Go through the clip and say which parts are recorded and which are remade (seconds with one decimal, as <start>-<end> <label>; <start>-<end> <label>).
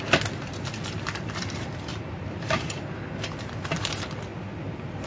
0.0-4.3 remade; 4.3-5.1 recorded